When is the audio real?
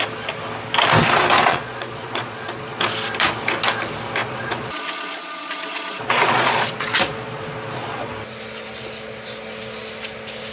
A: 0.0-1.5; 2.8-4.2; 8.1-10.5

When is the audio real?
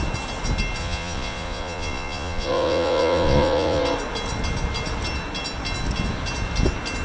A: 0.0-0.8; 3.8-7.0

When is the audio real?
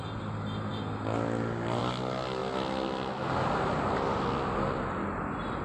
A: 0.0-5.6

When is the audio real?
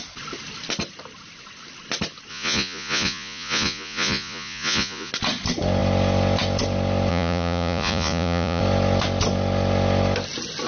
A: 0.0-2.3; 5.1-7.1; 8.6-10.7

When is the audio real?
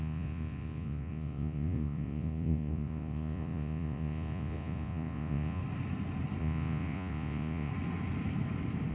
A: 5.6-6.4; 7.7-8.9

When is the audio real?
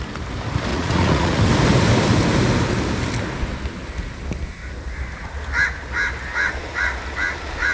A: 0.0-0.7; 1.4-7.7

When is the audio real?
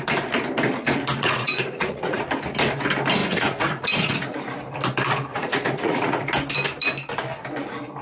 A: 0.0-1.1; 2.2-3.2; 4.4-5.3; 6.3-8.0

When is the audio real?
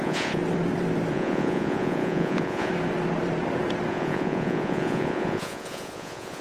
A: 0.4-1.1; 2.7-3.9